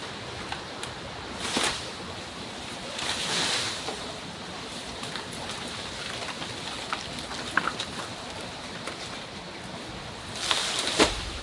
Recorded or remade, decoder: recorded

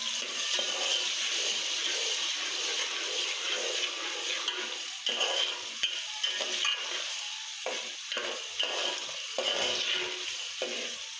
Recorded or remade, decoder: recorded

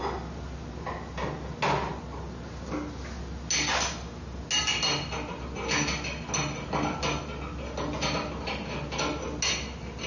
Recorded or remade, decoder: recorded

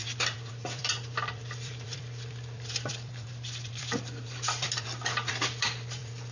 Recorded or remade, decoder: remade, vocoder, BigVGAN v2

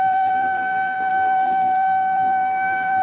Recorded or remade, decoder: remade, vocoder, BigVGAN v2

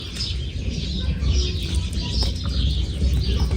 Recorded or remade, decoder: recorded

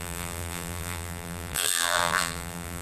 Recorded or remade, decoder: remade, vocoder, BigVGAN v2